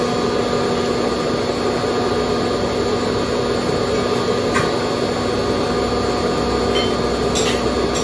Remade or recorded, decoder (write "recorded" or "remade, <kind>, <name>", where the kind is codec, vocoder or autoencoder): recorded